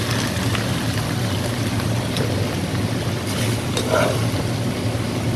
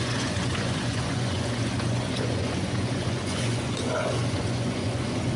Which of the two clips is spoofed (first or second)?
second